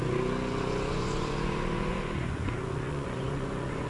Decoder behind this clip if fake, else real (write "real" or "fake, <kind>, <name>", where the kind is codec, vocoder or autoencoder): fake, vocoder, Vocos